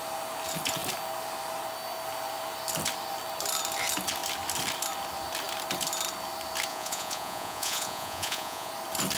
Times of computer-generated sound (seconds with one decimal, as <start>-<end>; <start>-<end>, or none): 6.7-8.7